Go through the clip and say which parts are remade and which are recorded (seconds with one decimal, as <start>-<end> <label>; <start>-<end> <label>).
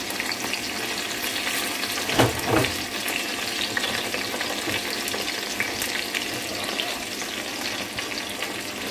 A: 0.0-6.5 recorded; 6.5-7.3 remade; 7.3-8.9 recorded